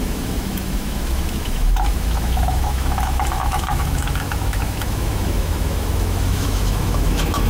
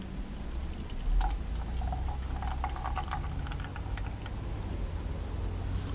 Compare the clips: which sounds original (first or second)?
second